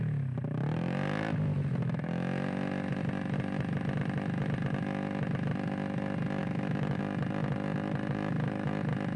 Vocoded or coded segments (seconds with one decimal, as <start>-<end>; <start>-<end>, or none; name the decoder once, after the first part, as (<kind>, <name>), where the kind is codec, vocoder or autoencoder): 6.4-7.0 (autoencoder, DAC-VAE)